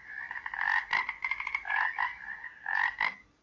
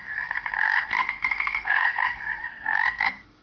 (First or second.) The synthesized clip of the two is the second